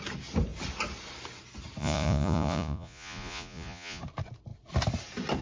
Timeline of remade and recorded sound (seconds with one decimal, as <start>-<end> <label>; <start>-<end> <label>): 0.0-1.8 recorded; 1.8-4.0 remade; 4.0-5.4 recorded